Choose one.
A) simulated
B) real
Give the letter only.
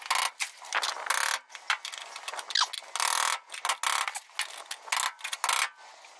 B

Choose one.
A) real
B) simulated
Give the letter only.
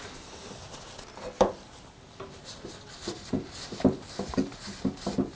A